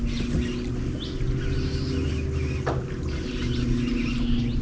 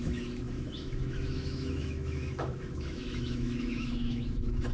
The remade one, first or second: second